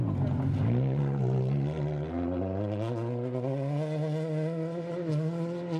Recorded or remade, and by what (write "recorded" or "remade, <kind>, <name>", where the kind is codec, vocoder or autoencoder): recorded